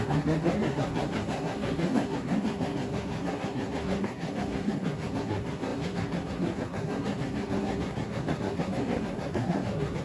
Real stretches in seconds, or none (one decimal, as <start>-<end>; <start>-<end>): none